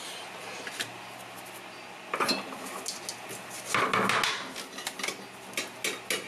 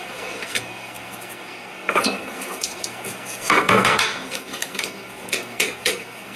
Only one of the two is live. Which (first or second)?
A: first